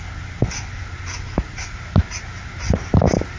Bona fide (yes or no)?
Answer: yes